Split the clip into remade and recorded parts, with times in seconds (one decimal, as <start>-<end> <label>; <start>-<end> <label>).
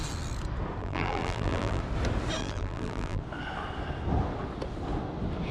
0.0-0.8 recorded; 0.8-1.8 remade; 1.8-2.4 recorded; 2.4-3.2 remade; 3.2-5.5 recorded